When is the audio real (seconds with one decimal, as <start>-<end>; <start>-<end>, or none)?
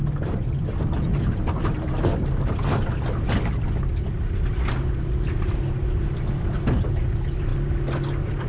0.0-8.5